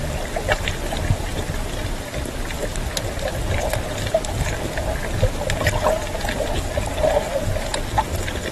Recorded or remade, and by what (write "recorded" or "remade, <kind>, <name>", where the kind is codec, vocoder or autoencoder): recorded